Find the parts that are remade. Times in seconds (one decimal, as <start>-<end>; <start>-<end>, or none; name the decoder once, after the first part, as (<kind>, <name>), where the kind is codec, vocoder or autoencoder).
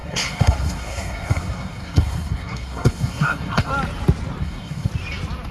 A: 0.0-3.7 (codec, SNAC); 4.4-4.9